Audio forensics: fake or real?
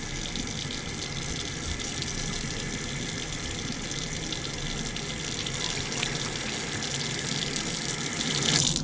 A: real